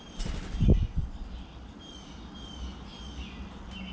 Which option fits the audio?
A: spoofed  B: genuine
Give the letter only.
B